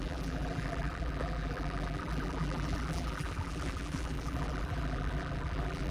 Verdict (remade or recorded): remade